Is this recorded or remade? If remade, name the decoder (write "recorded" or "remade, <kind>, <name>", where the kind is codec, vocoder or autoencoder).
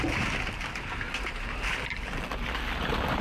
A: recorded